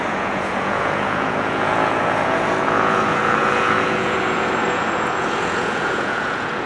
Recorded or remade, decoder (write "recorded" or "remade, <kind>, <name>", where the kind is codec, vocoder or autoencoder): remade, vocoder, Vocos